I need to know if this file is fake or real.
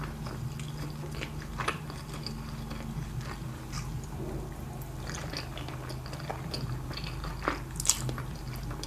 real